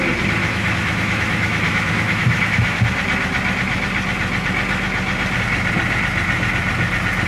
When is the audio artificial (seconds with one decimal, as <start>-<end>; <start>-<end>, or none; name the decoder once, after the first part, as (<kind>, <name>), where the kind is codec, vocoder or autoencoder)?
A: 0.4-2.8 (autoencoder, DAC-VAE)